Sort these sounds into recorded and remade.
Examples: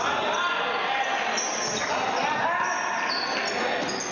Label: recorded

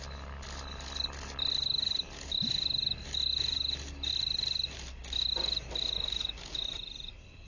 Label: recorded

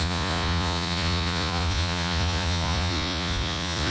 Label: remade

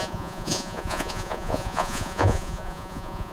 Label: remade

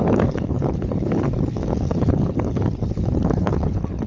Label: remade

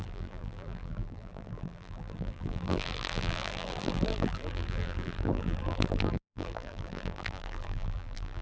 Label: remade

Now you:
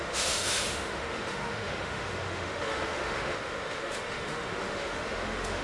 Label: remade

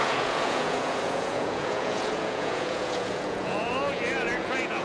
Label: remade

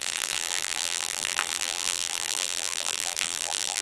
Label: remade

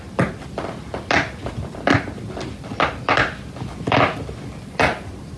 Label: recorded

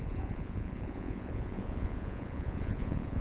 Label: remade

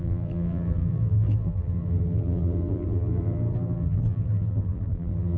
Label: remade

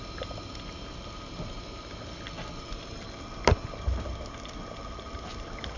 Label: recorded